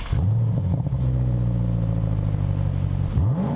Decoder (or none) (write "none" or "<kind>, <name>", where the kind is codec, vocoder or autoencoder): none